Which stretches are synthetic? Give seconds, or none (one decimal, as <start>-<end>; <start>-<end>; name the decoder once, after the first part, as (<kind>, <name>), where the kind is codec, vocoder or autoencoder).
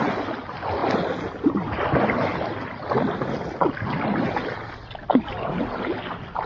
none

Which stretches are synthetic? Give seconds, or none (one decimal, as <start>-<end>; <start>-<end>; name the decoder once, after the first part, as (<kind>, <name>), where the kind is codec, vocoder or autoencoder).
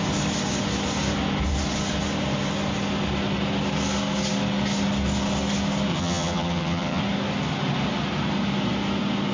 5.9-7.0 (vocoder, HiFi-GAN)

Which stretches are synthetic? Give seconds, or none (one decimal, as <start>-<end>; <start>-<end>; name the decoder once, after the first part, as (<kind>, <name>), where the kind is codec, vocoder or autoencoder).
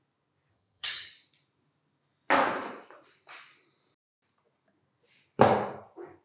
0.5-1.1 (vocoder, HiFi-GAN)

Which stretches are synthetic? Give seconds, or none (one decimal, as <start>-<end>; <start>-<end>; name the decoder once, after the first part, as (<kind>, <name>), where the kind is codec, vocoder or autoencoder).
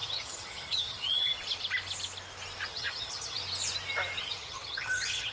0.0-1.3 (vocoder, HiFi-GAN); 2.7-3.4; 4.2-5.3